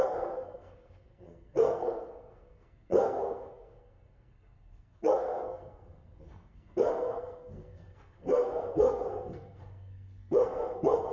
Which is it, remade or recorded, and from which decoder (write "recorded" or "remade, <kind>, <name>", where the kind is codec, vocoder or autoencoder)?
remade, codec, SNAC